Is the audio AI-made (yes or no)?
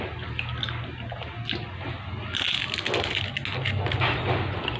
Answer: no